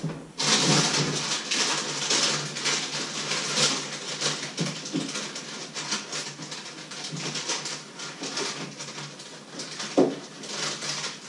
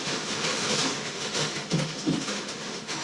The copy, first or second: second